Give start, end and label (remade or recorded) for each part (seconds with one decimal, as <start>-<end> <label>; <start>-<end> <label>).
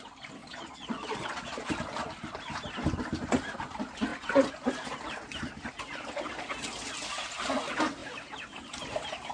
0.0-0.4 recorded; 0.4-1.7 remade; 1.7-9.3 recorded